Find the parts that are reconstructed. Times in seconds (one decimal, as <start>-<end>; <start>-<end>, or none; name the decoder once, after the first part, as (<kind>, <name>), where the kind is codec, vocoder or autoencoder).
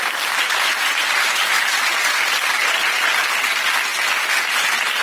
none